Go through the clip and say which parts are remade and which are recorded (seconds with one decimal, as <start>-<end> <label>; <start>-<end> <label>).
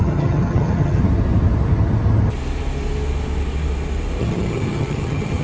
0.0-1.0 remade; 1.0-4.2 recorded; 4.2-5.4 remade